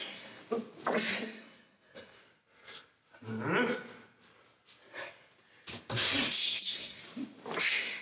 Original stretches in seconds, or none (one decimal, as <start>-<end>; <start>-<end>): 0.4-1.1; 2.2-5.9; 7.0-7.6

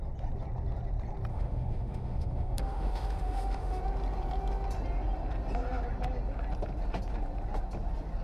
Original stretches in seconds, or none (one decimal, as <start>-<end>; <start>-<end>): 0.0-1.3; 3.8-8.2